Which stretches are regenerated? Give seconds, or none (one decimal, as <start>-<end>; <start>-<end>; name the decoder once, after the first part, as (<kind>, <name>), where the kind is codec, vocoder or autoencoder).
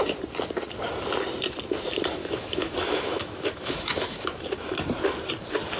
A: 2.2-4.7 (autoencoder, DAC-VAE)